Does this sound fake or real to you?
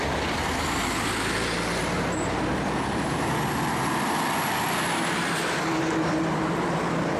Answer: real